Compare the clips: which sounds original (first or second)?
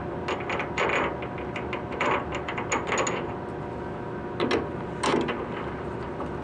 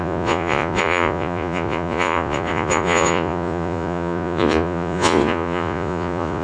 first